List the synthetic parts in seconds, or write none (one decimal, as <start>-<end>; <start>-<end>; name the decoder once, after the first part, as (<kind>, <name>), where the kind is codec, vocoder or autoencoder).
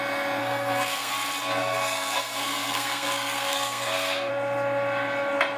0.4-1.1 (codec, SNAC); 1.6-4.3